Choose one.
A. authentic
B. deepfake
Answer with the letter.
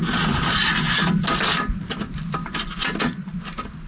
A